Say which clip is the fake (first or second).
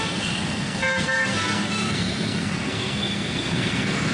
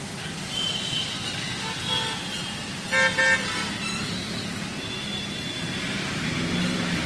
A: first